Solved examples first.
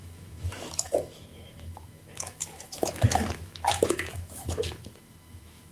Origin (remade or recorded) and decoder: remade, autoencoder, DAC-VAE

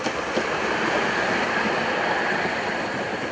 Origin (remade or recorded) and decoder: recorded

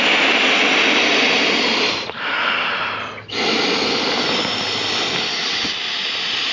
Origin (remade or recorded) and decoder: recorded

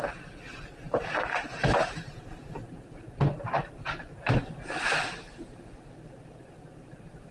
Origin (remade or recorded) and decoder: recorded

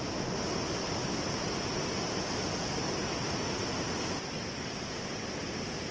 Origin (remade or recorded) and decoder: recorded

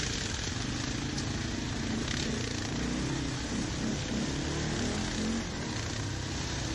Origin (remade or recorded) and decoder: recorded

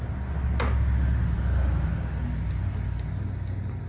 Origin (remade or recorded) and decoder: recorded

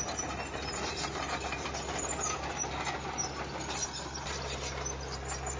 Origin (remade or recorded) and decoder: recorded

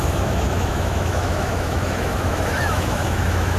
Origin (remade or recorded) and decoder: remade, autoencoder, DAC-VAE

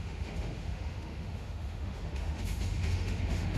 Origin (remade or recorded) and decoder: remade, autoencoder, DAC-VAE